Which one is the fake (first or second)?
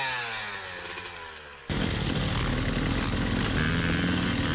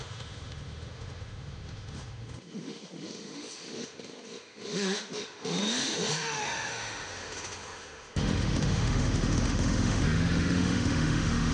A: second